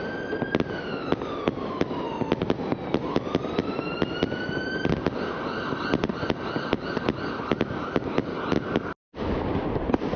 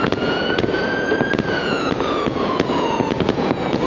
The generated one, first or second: second